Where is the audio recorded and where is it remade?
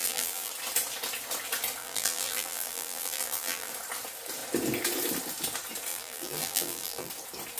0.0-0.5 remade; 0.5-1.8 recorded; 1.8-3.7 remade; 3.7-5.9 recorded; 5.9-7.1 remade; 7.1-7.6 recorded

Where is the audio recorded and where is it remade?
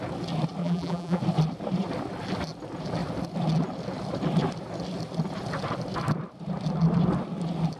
0.0-0.6 recorded; 0.6-1.2 remade; 1.2-7.8 recorded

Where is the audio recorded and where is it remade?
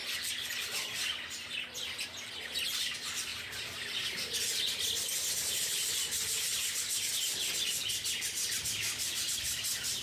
0.0-10.0 recorded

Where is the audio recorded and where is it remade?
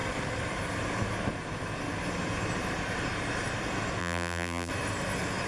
0.0-4.0 recorded; 4.0-4.7 remade; 4.7-5.5 recorded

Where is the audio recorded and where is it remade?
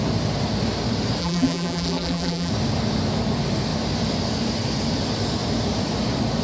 0.0-1.2 recorded; 1.2-2.5 remade; 2.5-6.4 recorded